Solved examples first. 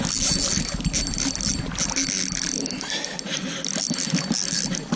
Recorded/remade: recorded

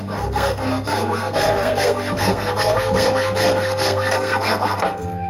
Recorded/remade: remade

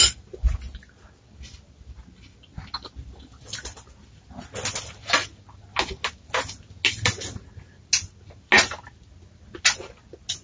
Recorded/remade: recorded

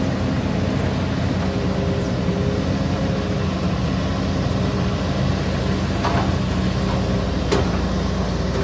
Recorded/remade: recorded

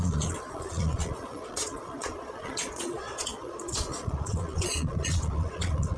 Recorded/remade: remade